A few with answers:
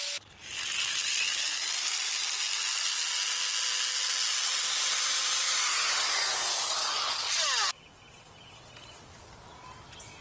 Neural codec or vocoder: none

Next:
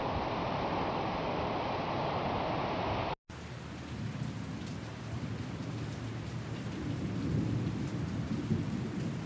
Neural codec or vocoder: none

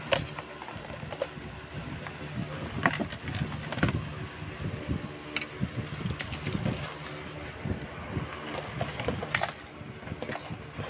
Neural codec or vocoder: none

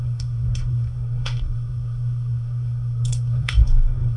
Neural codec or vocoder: codec, SNAC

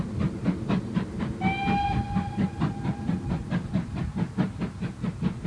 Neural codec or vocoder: none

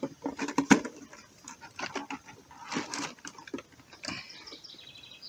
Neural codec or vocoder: none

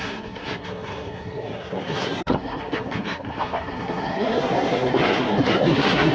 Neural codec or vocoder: codec, SNAC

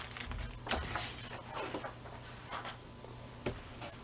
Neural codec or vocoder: none